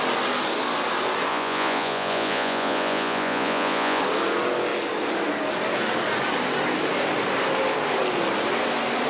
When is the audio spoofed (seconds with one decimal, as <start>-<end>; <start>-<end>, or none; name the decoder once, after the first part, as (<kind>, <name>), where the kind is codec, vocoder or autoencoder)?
1.3-4.0 (vocoder, Vocos)